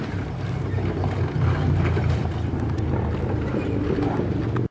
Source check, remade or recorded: recorded